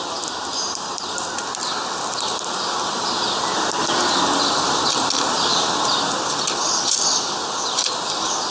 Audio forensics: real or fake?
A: real